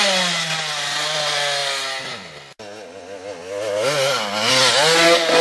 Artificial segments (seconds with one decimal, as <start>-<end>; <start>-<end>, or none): none